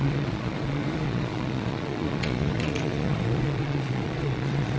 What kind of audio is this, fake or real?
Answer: fake